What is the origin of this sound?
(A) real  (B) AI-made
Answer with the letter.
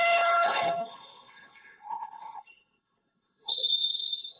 B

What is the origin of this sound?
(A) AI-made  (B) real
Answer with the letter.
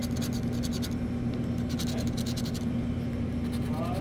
B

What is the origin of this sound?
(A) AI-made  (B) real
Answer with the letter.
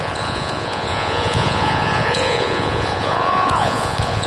A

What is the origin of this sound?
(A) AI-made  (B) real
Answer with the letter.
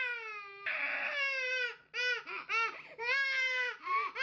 B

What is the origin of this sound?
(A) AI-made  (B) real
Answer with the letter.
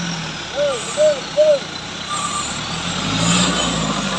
B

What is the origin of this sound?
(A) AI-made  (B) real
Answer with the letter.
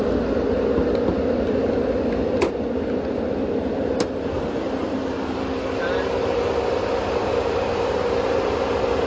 B